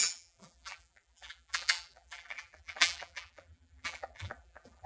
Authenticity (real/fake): fake